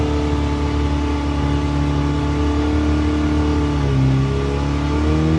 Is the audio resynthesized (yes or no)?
no